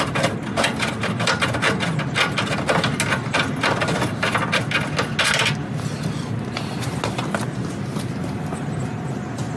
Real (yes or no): yes